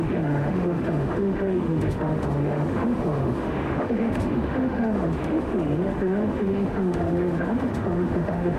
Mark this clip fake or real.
fake